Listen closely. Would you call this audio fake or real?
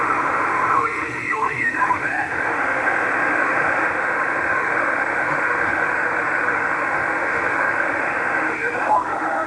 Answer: fake